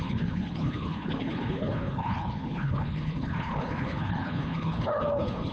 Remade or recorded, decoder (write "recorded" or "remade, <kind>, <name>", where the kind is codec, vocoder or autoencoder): remade, codec, HILCodec